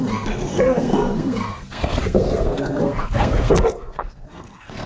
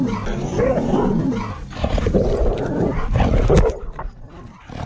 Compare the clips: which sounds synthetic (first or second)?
first